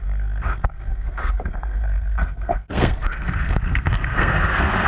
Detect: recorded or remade remade